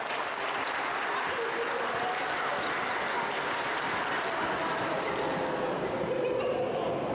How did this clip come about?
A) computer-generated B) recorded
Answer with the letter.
B